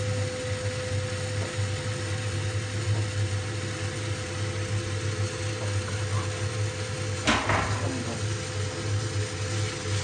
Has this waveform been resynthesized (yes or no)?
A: no